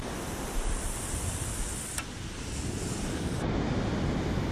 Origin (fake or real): real